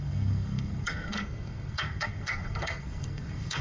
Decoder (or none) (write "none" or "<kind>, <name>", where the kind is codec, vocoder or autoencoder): codec, SNAC